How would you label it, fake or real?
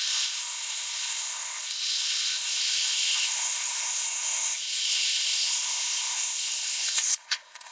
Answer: fake